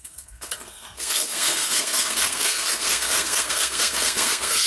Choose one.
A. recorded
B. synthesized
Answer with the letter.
B